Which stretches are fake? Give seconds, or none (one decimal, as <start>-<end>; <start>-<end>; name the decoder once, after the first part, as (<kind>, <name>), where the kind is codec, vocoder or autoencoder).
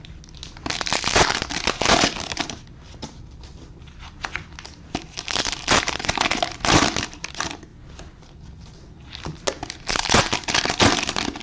none